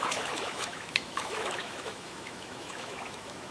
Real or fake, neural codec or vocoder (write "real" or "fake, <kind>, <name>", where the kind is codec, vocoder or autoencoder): fake, autoencoder, DAC-VAE